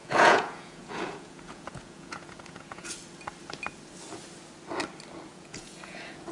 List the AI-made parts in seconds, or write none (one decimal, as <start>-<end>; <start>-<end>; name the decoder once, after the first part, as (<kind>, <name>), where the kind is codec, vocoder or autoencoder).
0.0-2.9 (vocoder, Vocos); 5.3-6.3